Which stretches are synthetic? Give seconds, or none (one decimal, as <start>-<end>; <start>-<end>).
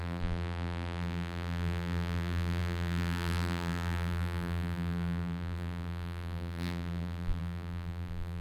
0.0-8.4